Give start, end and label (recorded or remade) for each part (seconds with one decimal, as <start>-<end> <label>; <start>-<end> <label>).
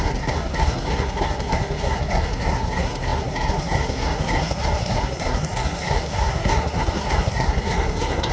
0.0-8.3 remade